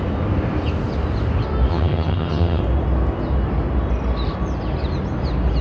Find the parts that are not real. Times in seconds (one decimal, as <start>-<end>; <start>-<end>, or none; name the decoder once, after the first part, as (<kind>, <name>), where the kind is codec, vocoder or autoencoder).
1.7-2.6 (vocoder, HiFi-GAN)